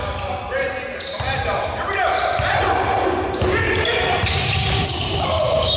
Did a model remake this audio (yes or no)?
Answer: yes